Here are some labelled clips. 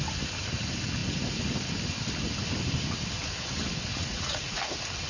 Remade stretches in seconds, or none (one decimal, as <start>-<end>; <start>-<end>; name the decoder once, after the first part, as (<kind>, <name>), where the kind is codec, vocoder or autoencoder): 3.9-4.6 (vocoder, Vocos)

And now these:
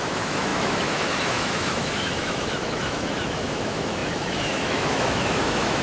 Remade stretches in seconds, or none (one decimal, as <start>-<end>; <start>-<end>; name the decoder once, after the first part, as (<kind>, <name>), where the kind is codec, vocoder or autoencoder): 0.0-5.8 (autoencoder, DAC-VAE)

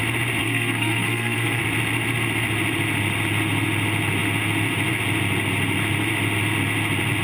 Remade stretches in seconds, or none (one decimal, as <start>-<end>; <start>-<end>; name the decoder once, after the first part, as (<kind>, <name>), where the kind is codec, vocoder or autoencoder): 0.4-1.6 (codec, SNAC)

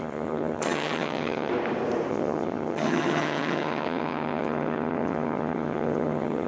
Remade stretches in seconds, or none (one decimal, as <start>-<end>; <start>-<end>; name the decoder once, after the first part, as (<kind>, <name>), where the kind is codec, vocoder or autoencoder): 0.0-1.5 (vocoder, HiFi-GAN); 2.1-6.5

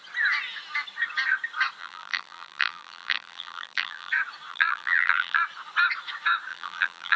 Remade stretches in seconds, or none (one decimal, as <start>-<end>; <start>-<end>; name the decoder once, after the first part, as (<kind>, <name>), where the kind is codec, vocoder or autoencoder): 1.8-4.1 (vocoder, BigVGAN v2); 4.5-5.4; 6.5-7.2